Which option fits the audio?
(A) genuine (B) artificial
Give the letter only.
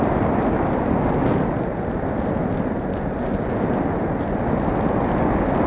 A